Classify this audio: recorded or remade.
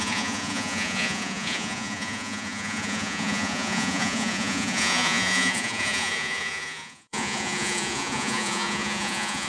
remade